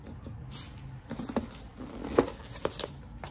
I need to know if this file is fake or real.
real